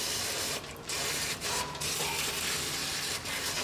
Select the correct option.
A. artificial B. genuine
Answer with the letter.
B